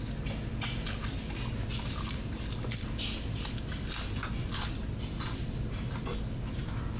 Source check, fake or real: real